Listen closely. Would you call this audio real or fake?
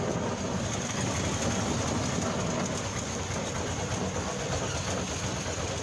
real